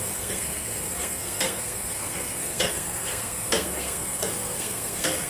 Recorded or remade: remade